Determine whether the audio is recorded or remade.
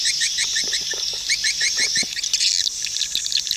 recorded